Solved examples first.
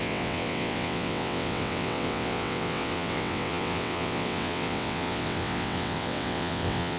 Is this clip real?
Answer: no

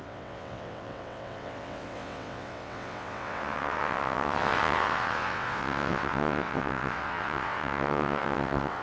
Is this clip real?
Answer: no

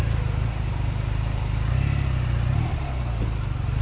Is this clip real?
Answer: yes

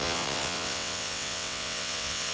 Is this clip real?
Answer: no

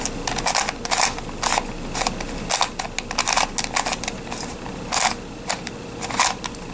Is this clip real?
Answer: yes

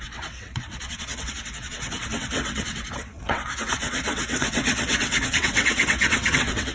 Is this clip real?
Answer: no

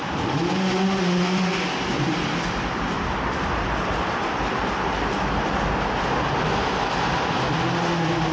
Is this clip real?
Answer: yes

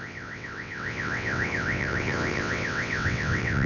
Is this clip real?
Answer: no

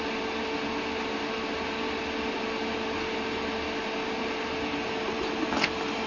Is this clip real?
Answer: yes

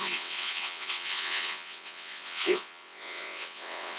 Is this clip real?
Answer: no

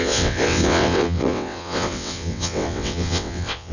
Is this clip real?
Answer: no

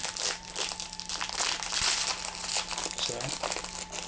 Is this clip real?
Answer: yes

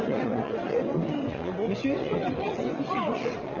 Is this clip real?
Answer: no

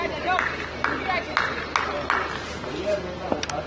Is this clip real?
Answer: yes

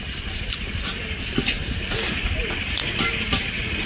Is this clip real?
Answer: yes